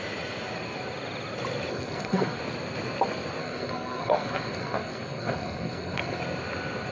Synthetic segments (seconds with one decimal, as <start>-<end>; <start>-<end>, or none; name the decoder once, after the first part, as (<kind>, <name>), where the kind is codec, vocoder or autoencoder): 1.7-2.4 (codec, SNAC); 3.4-6.2